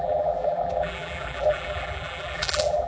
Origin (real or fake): fake